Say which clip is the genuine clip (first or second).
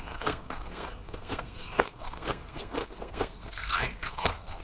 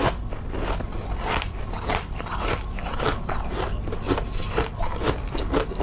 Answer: second